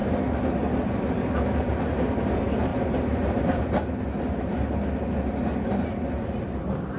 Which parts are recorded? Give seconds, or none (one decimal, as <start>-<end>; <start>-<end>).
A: 0.0-7.0